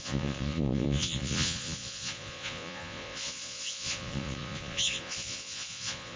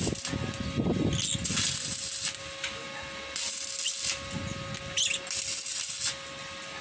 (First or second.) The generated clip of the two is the first